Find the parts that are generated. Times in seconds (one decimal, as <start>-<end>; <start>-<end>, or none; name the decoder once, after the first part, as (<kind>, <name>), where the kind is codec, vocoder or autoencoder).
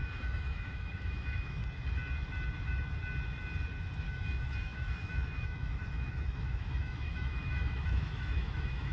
0.0-1.6 (autoencoder, DAC-VAE); 4.1-8.9